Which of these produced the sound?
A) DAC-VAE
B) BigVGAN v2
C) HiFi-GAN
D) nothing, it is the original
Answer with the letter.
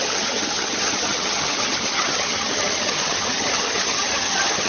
C